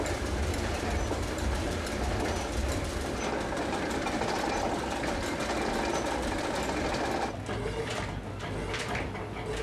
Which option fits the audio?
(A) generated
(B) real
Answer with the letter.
B